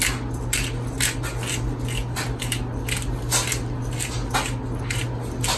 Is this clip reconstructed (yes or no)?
no